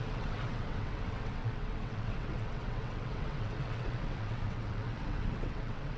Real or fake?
fake